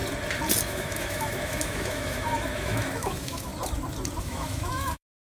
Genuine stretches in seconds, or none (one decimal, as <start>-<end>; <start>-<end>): 0.0-0.6; 3.5-4.2